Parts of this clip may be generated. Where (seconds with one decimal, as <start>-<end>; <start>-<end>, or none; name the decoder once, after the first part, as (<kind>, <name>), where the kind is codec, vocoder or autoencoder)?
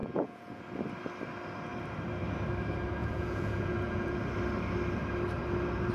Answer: 0.0-0.6 (vocoder, Vocos); 3.0-4.2